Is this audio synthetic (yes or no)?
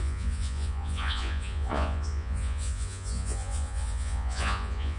yes